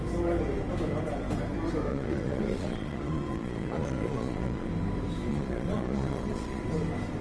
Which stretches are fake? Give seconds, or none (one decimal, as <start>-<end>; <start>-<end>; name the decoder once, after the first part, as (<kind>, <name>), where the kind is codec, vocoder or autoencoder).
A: 1.9-4.7 (vocoder, Vocos); 5.3-6.6

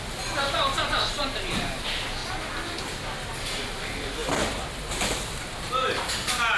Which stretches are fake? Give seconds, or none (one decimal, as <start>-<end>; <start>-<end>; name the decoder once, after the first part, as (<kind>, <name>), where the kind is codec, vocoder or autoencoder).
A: 4.2-5.7 (vocoder, BigVGAN v2)

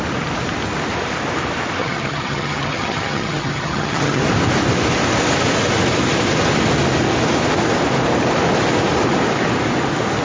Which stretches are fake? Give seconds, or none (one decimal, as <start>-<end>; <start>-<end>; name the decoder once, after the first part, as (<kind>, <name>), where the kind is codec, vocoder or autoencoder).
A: 1.8-4.2 (vocoder, HiFi-GAN)